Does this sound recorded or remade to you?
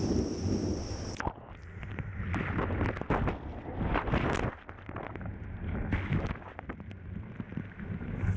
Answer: recorded